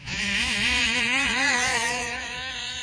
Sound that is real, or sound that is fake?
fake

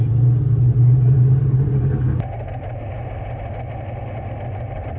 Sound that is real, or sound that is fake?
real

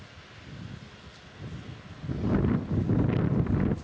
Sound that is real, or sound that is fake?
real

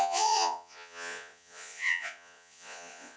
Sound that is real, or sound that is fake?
fake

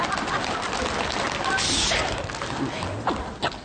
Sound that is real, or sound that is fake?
real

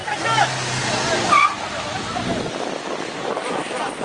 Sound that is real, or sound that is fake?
real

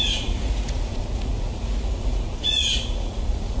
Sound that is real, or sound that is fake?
fake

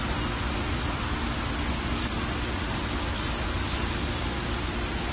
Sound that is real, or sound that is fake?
real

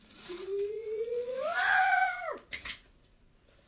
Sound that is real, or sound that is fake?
fake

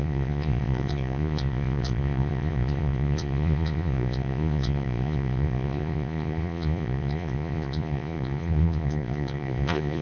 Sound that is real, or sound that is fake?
fake